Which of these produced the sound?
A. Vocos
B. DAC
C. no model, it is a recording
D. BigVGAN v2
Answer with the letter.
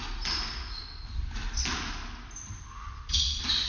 C